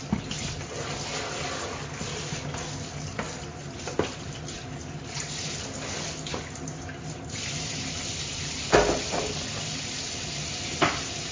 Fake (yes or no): no